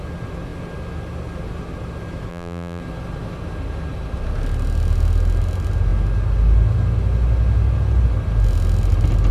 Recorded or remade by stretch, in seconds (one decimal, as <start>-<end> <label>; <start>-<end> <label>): 0.0-2.3 recorded; 2.3-2.8 remade; 2.8-9.3 recorded